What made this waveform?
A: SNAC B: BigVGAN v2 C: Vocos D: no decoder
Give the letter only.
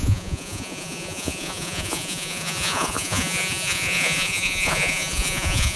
C